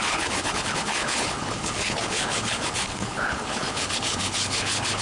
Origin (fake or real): fake